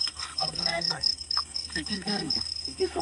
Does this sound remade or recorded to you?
remade